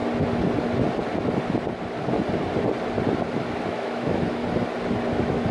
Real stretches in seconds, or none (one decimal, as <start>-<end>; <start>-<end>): 0.0-3.3; 4.4-5.1